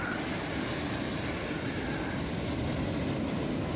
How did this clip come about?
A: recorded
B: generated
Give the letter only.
A